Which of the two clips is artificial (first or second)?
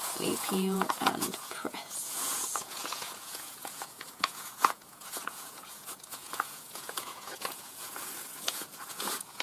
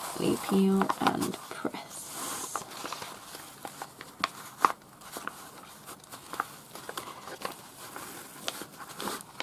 first